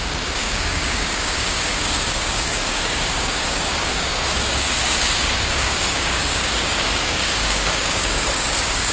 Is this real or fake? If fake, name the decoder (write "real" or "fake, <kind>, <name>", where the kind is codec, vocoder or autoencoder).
fake, codec, DAC